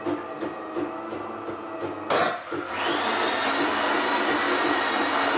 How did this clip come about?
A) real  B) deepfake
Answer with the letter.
A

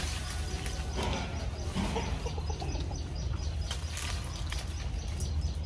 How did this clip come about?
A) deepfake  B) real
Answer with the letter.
B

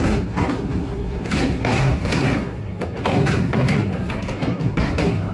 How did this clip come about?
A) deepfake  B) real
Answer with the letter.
A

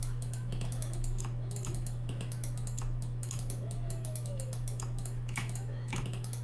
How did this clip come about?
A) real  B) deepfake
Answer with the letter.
B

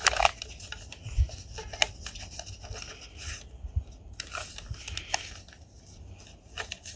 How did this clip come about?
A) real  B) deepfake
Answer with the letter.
A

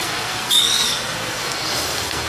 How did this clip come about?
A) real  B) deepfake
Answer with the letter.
B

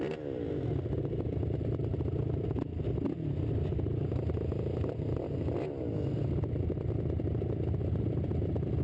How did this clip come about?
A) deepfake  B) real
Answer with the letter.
B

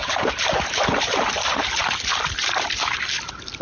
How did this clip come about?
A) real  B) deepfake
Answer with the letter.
A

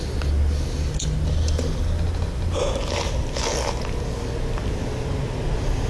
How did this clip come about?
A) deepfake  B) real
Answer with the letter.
B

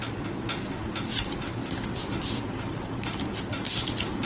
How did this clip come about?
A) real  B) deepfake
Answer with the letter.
A